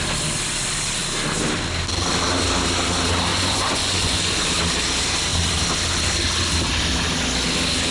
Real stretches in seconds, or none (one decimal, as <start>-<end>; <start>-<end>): 0.0-3.3; 4.5-7.9